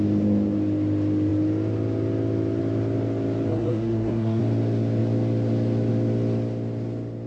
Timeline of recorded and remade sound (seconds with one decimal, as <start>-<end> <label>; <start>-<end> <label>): 0.0-3.5 recorded; 3.5-4.4 remade; 4.4-7.3 recorded